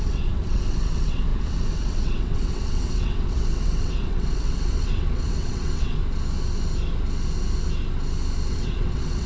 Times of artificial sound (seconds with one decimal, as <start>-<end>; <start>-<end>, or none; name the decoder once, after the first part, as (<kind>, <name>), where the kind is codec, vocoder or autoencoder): 0.0-6.0 (vocoder, WaveNeXt); 8.5-9.3

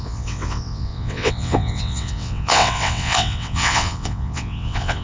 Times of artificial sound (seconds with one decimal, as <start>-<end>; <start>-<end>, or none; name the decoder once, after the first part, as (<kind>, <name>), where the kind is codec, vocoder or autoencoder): 0.0-5.0 (vocoder, WaveNeXt)